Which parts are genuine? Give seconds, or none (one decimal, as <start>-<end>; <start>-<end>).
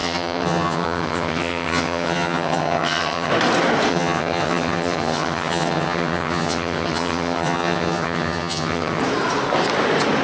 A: 3.3-3.9; 9.0-10.2